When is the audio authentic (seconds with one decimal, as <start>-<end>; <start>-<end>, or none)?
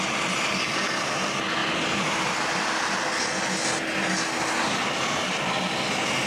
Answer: 0.0-6.3